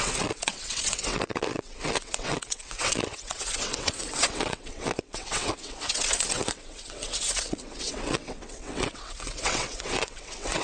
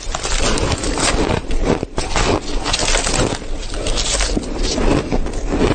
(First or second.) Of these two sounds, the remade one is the first